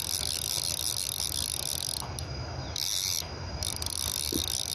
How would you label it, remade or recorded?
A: recorded